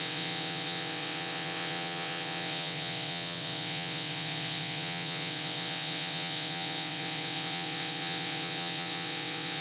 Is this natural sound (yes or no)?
no